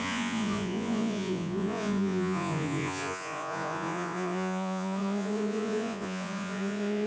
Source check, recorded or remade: remade